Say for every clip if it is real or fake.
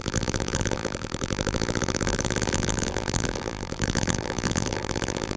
fake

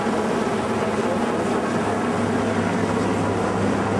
real